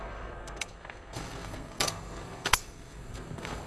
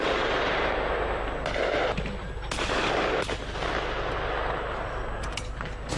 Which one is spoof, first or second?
first